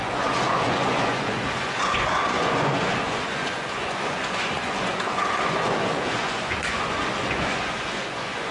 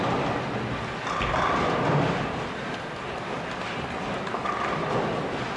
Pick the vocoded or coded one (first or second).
first